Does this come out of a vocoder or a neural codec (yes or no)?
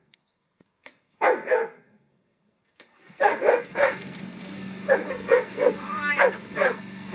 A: yes